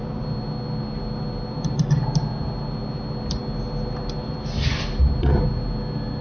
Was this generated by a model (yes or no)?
no